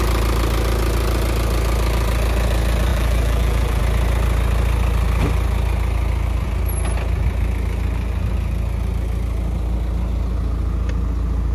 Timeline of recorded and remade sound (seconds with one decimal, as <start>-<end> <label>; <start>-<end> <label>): 0.0-2.9 recorded; 2.9-3.8 remade; 3.8-11.5 recorded

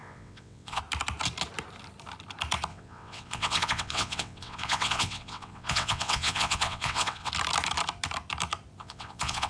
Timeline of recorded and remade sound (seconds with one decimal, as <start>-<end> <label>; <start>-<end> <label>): 0.0-0.8 remade; 0.8-2.7 recorded; 2.7-7.3 remade; 7.3-8.8 recorded; 8.8-9.5 remade

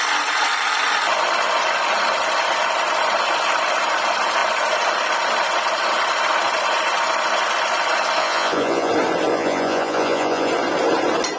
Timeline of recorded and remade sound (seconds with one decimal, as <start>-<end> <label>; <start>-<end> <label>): 0.0-8.2 recorded; 8.2-8.9 remade; 8.9-9.3 recorded; 9.3-10.5 remade; 10.5-11.4 recorded

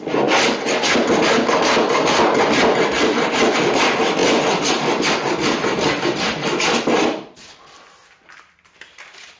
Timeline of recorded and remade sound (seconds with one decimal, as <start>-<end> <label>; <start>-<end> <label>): 0.0-9.4 recorded

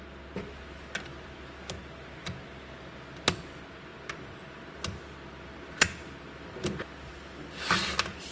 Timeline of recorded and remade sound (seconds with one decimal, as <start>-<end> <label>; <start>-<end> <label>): 0.0-8.3 recorded

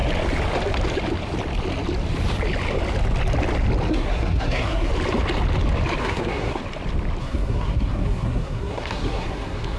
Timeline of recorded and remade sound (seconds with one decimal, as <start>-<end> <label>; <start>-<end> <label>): 0.0-3.9 recorded; 3.9-4.9 remade; 4.9-6.0 recorded; 6.0-6.6 remade; 6.6-7.2 recorded; 7.2-9.8 remade

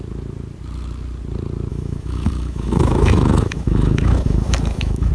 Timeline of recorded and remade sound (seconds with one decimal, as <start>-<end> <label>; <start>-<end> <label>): 0.0-1.7 recorded; 1.7-5.1 remade

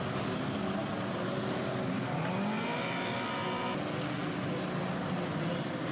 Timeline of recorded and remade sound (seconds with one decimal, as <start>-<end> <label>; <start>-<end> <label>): 0.0-5.9 recorded